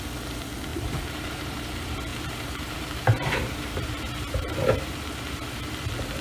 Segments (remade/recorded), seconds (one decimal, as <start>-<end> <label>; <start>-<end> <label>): 0.0-0.7 recorded; 0.7-1.6 remade; 1.6-2.1 recorded; 2.1-5.0 remade; 5.0-6.2 recorded